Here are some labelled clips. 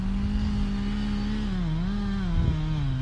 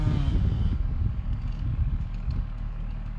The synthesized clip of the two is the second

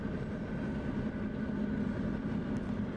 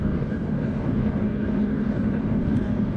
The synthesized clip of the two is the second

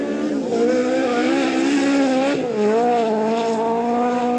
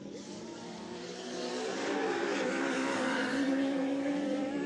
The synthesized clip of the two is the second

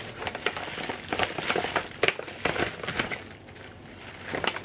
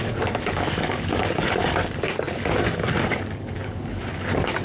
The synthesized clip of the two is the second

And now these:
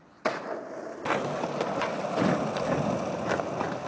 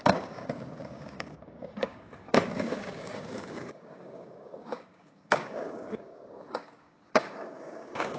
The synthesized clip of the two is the second